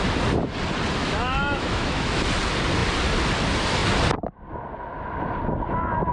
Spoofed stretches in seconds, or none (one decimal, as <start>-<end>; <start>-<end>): 1.0-2.2